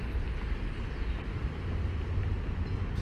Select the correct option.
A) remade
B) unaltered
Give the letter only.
B